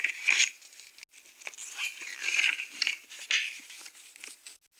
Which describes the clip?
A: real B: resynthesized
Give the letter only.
A